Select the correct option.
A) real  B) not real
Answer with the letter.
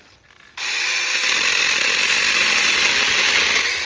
A